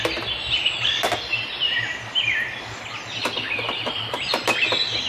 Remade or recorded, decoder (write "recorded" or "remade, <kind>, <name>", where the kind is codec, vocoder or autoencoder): recorded